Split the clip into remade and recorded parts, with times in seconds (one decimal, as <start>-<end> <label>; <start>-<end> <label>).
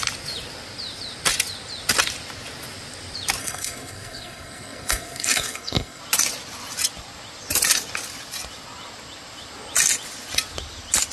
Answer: 0.0-3.4 recorded; 3.4-6.0 remade; 6.0-11.1 recorded